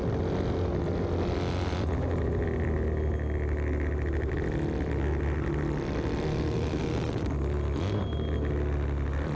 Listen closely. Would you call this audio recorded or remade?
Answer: recorded